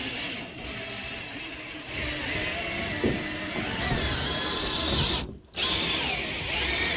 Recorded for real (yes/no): yes